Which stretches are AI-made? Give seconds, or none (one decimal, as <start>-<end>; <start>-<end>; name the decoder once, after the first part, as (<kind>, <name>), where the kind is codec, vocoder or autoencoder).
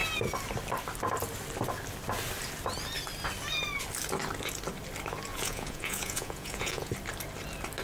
5.3-6.9 (vocoder, Vocos)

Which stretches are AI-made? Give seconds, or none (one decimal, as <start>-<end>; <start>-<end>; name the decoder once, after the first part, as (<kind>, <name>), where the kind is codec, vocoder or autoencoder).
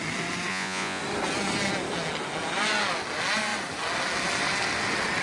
0.5-1.0 (vocoder, Vocos)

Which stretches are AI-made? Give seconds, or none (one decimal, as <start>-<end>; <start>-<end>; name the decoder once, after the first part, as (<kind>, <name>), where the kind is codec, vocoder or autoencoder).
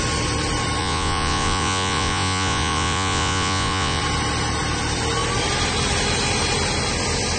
0.8-4.0 (vocoder, Vocos)